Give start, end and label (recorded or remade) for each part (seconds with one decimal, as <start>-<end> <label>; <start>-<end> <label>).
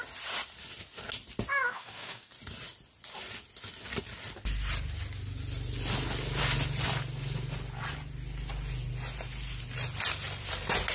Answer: 0.0-1.7 recorded; 1.7-2.3 remade; 2.3-10.9 recorded